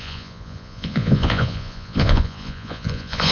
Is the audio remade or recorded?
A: remade